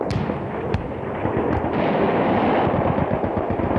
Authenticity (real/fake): real